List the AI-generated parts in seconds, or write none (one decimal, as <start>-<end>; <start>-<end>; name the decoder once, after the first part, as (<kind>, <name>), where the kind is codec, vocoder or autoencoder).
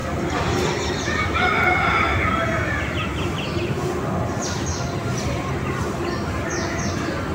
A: none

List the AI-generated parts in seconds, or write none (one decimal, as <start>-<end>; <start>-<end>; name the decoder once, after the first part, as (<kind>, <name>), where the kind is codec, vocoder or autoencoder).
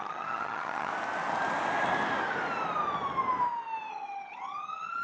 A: 0.0-0.9 (vocoder, HiFi-GAN); 3.9-5.0